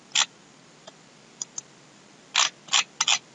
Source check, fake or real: real